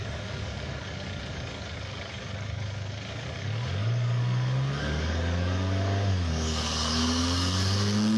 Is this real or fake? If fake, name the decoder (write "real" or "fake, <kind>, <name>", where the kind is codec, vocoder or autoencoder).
fake, codec, DAC